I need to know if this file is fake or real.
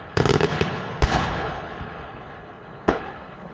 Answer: fake